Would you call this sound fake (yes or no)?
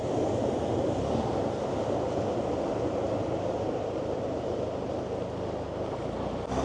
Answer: no